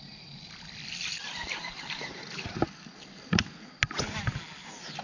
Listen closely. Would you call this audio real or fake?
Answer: real